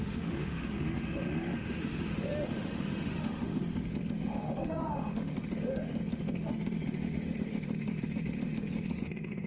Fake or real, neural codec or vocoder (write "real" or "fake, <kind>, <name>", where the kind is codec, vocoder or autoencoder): fake, autoencoder, DAC-VAE